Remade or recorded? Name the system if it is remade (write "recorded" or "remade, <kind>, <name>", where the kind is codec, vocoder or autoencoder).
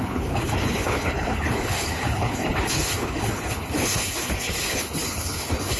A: remade, codec, HILCodec